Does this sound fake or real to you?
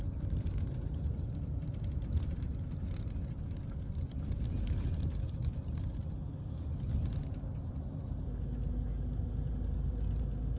real